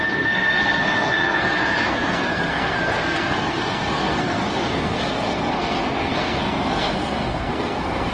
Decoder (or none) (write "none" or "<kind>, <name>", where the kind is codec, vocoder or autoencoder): codec, SNAC